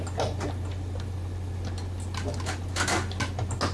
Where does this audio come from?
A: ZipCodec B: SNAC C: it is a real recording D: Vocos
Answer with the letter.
C